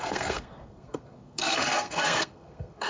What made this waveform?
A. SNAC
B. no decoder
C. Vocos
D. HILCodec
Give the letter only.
A